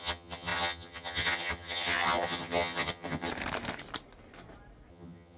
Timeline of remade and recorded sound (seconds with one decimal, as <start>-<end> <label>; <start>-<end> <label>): 0.0-3.3 remade; 3.3-4.9 recorded; 4.9-5.4 remade